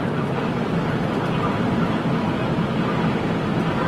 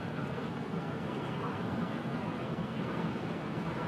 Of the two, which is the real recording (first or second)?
first